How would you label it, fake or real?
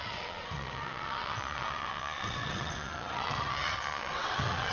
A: fake